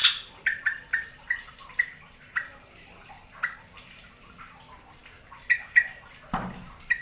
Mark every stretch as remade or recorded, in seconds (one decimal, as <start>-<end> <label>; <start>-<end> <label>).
0.0-7.0 recorded